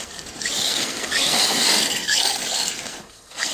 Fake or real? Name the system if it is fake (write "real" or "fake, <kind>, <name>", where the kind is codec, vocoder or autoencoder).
fake, codec, SNAC